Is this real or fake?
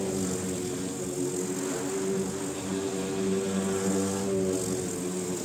real